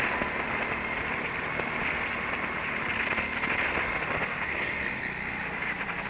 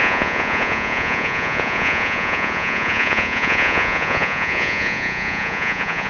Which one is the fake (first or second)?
second